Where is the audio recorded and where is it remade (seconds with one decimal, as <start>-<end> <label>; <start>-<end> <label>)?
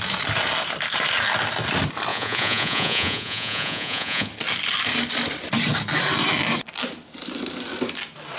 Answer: 0.0-2.1 recorded; 2.1-4.3 remade; 4.3-8.4 recorded